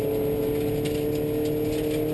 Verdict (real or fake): real